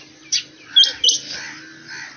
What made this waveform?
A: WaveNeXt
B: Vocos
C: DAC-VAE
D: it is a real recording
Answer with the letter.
D